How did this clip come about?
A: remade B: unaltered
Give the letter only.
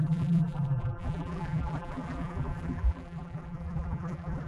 A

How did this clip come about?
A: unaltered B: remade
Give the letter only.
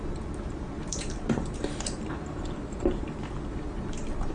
B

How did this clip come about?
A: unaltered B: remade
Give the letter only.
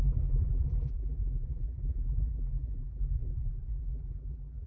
B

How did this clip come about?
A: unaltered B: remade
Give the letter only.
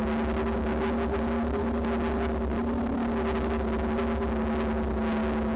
A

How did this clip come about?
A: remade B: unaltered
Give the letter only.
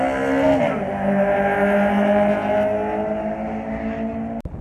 B